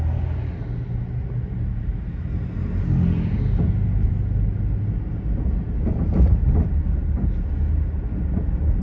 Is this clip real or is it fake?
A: real